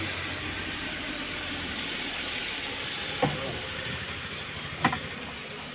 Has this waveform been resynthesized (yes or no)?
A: no